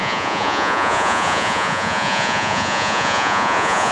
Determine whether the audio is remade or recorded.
remade